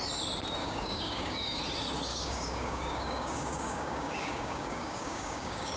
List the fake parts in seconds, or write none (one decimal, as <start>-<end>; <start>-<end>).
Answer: 0.6-1.6; 2.1-5.8